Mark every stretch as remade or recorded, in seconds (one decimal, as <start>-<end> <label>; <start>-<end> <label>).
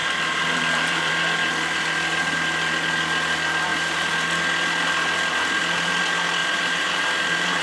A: 0.0-1.1 remade; 1.1-6.4 recorded; 6.4-7.6 remade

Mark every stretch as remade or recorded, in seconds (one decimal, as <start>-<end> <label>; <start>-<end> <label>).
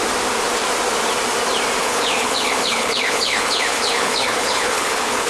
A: 0.0-1.8 recorded; 1.8-5.3 remade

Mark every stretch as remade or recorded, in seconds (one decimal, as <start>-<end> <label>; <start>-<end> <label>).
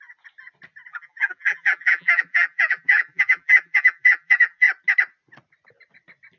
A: 0.0-0.9 recorded; 0.9-4.7 remade; 4.7-6.4 recorded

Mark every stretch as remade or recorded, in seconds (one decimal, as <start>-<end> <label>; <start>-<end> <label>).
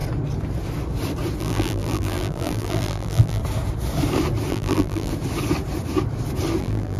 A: 0.0-1.4 recorded; 1.4-3.4 remade; 3.4-4.5 recorded; 4.5-5.1 remade; 5.1-6.6 recorded; 6.6-7.0 remade